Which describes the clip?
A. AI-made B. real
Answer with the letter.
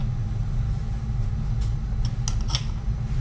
B